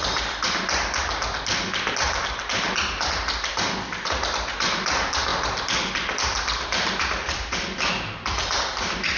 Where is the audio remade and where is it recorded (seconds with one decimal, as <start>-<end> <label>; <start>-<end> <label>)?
0.0-5.3 recorded; 5.3-7.9 remade; 7.9-9.2 recorded